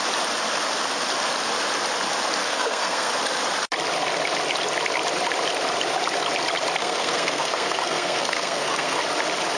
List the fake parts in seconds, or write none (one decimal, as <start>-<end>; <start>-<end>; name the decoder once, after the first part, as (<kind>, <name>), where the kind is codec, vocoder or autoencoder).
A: 2.4-3.1 (codec, SNAC); 6.8-9.0